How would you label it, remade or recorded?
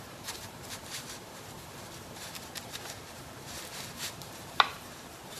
remade